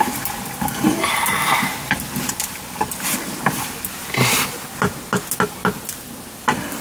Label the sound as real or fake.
real